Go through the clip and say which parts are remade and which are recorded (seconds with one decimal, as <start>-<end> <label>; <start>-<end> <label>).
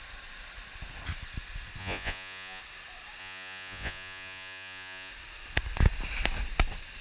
0.0-1.8 recorded; 1.8-2.6 remade; 2.6-3.2 recorded; 3.2-5.1 remade; 5.1-7.0 recorded